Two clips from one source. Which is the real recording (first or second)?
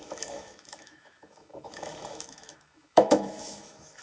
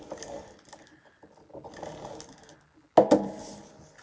second